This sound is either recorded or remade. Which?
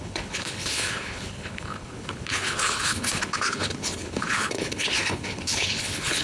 remade